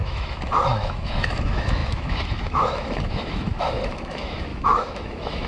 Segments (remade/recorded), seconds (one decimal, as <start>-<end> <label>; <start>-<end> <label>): 0.0-5.5 remade